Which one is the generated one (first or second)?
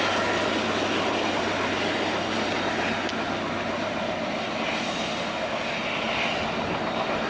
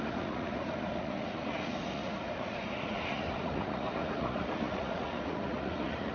second